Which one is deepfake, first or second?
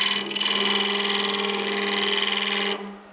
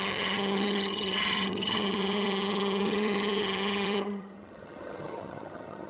second